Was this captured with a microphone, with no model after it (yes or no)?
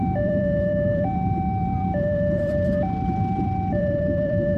no